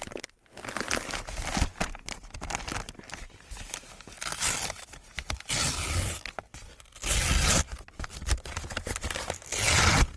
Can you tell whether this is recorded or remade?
recorded